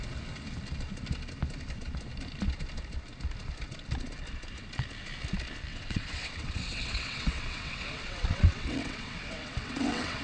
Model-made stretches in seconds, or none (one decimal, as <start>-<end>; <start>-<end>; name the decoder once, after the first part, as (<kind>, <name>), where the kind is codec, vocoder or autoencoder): 5.7-10.2 (vocoder, WaveNeXt)